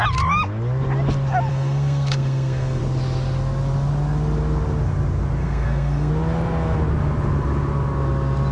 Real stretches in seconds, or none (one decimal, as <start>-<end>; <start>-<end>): 0.0-1.5; 2.8-5.4; 6.1-8.5